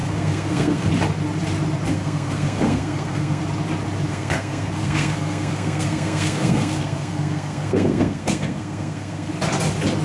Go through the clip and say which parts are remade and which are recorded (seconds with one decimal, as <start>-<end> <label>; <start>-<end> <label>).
0.0-0.9 remade; 0.9-1.9 recorded; 1.9-3.4 remade; 3.4-4.1 recorded; 4.1-9.3 remade; 9.3-10.0 recorded